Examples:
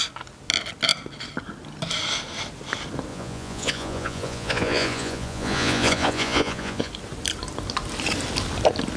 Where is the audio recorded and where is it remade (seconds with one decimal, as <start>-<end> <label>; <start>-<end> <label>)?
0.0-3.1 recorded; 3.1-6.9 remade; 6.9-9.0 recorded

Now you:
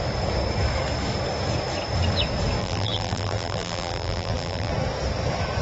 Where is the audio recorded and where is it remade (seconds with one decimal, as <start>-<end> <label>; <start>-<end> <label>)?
0.0-2.6 recorded; 2.6-4.7 remade; 4.7-5.6 recorded

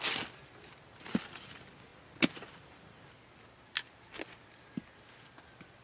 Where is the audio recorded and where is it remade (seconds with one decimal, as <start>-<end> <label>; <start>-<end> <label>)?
0.0-5.8 recorded

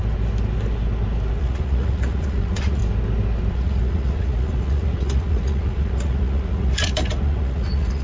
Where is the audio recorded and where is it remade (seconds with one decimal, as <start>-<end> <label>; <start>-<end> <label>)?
0.0-1.4 recorded; 1.4-2.8 remade; 2.8-3.5 recorded; 3.5-8.0 remade

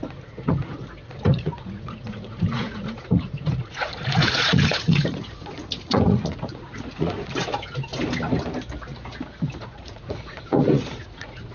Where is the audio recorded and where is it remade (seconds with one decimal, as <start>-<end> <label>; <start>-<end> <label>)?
0.0-7.9 remade; 7.9-9.6 recorded; 9.6-11.5 remade

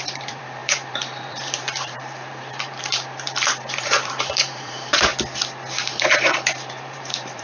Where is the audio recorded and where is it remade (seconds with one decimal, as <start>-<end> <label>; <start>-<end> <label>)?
0.0-5.1 remade; 5.1-5.7 recorded; 5.7-7.4 remade

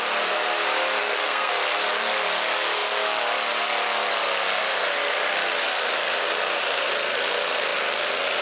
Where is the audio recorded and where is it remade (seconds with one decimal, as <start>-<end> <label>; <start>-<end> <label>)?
0.0-1.0 recorded; 1.0-1.5 remade; 1.5-8.4 recorded

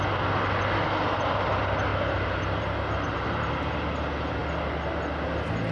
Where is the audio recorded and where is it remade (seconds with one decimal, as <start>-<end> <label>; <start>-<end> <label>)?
0.0-1.9 recorded; 1.9-3.5 remade; 3.5-5.7 recorded